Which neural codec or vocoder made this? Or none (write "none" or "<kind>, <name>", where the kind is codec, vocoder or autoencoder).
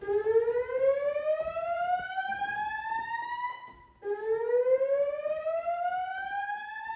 none